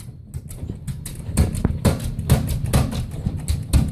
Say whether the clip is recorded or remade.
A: recorded